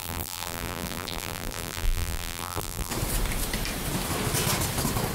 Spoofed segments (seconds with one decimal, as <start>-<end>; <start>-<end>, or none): 0.0-2.9